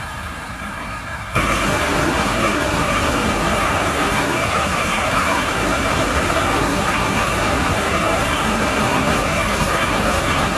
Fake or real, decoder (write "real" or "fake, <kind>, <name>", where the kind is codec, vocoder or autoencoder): fake, codec, SNAC